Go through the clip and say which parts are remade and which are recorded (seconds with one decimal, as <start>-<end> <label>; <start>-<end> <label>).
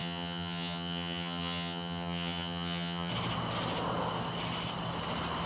0.0-3.1 remade; 3.1-5.5 recorded